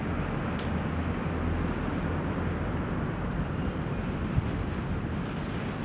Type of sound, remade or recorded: recorded